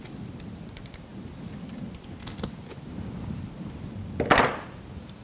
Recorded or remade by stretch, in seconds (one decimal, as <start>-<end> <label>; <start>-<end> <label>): 0.0-5.2 recorded